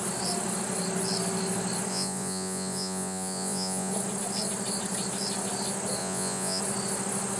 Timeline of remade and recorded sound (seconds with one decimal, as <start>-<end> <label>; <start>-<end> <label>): 0.0-1.9 recorded; 1.9-3.9 remade; 3.9-6.0 recorded; 6.0-6.6 remade; 6.6-7.4 recorded